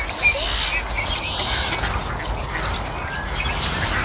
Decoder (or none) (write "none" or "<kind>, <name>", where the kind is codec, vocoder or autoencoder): none